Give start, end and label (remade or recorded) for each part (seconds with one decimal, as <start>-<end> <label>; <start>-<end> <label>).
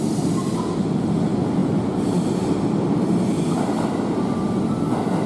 0.0-5.3 recorded